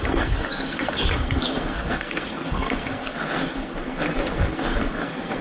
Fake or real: fake